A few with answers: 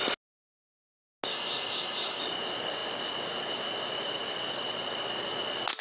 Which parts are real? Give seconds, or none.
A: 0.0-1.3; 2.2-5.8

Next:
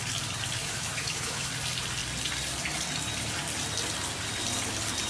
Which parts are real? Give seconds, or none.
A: 0.0-0.6; 1.5-5.1